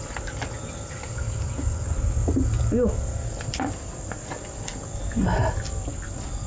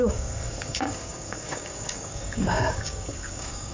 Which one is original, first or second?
first